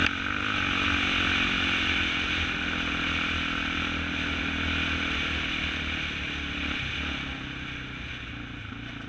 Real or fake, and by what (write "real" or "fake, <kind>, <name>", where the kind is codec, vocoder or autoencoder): real